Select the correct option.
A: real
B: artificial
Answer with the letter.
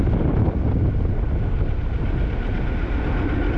A